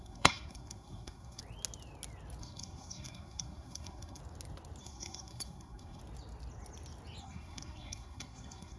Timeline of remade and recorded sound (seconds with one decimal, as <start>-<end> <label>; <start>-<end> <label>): 0.0-1.4 remade; 1.4-2.4 recorded; 2.4-4.2 remade; 4.2-4.8 recorded; 4.8-6.0 remade; 6.0-7.2 recorded; 7.2-8.8 remade